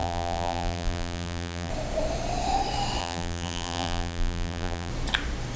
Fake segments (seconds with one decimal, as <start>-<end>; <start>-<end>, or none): 0.0-1.7; 3.0-4.9